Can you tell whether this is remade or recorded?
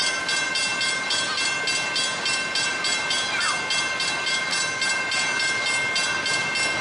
recorded